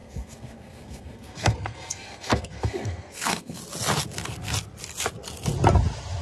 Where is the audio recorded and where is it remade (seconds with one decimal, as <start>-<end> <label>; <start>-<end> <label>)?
0.0-3.6 remade; 3.6-6.2 recorded